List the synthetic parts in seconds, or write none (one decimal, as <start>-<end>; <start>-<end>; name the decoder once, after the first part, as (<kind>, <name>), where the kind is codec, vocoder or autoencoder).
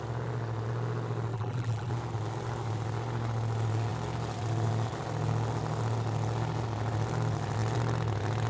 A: 1.3-1.9 (vocoder, BigVGAN v2)